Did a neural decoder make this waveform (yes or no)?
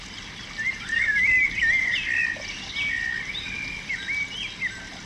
no